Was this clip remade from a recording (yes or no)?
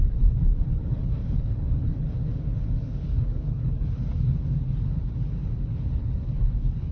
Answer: yes